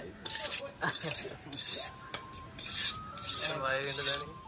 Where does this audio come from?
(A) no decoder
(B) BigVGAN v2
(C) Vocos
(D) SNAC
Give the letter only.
B